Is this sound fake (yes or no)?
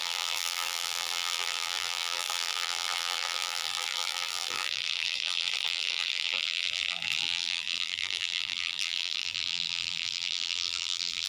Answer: yes